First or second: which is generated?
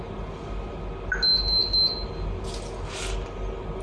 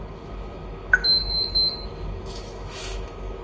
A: second